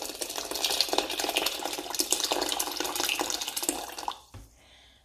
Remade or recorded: recorded